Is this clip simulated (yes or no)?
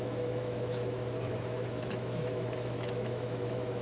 yes